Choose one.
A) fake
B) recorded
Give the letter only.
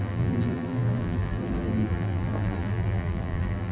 A